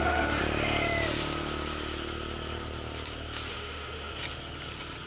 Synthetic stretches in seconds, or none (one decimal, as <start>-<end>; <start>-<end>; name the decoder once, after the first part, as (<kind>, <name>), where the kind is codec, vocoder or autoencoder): 0.0-0.4 (autoencoder, DAC-VAE); 3.5-4.1